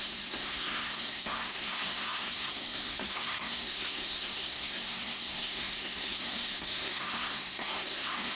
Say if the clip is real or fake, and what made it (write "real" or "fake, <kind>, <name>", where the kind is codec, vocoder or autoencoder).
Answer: fake, codec, SNAC